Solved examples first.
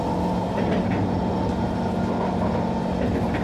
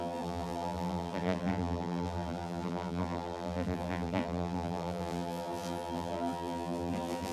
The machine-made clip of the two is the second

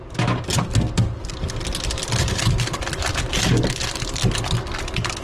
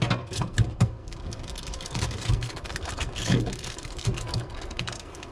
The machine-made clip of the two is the second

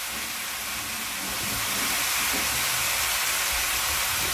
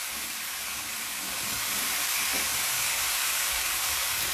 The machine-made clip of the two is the second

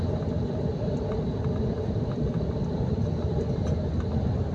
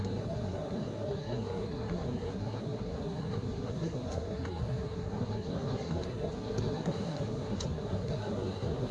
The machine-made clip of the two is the second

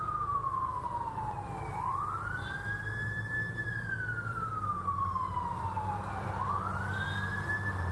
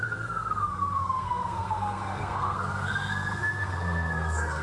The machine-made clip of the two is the second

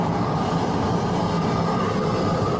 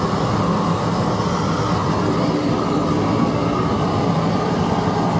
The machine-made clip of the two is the first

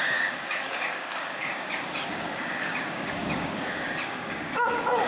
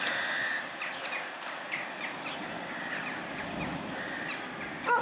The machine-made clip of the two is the first